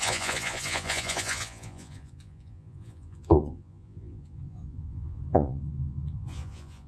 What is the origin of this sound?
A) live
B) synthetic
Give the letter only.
B